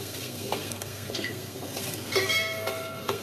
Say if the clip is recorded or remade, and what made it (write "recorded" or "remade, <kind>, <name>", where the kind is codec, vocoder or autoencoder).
remade, codec, SNAC